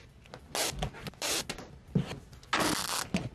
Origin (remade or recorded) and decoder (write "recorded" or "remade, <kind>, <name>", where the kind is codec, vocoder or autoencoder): recorded